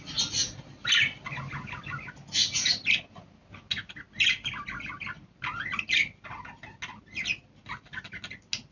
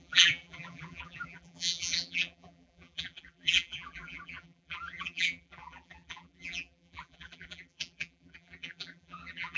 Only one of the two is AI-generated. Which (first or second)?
second